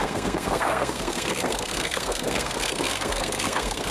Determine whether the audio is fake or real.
fake